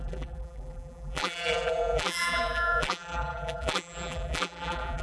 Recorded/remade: remade